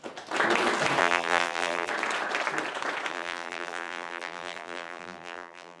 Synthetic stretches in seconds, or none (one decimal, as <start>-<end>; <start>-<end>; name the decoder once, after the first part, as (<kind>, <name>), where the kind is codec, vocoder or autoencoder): 1.0-1.9 (vocoder, BigVGAN v2); 3.1-5.8